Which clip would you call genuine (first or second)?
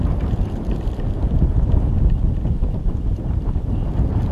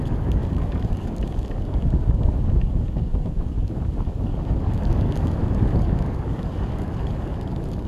first